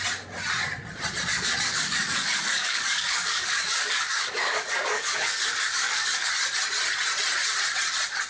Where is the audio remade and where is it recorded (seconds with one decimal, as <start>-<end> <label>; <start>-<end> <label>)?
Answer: 0.0-1.3 recorded; 1.3-6.3 remade; 6.3-8.3 recorded